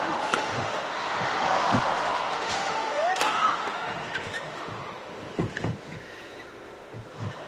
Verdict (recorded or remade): remade